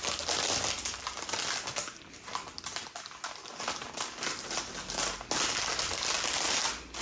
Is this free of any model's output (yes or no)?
yes